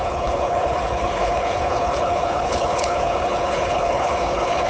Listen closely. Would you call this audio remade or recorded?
remade